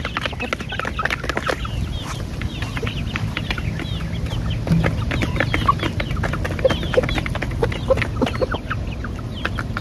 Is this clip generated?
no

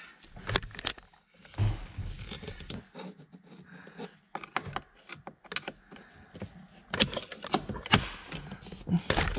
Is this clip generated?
no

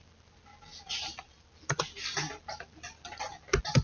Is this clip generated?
no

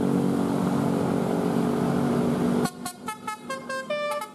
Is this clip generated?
no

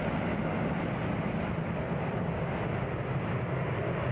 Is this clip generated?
no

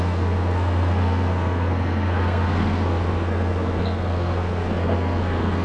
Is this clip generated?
yes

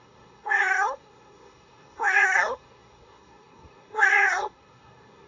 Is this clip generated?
yes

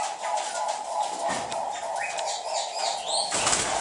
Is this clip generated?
no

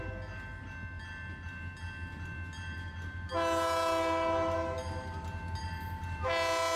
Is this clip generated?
no